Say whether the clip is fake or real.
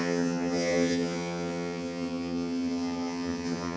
fake